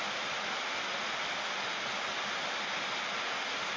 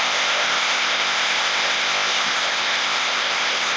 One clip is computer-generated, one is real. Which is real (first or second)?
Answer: first